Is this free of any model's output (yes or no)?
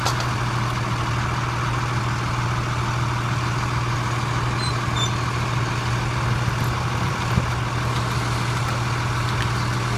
yes